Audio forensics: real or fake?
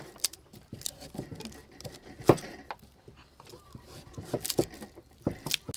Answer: real